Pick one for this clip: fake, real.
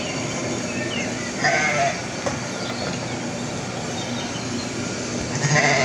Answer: real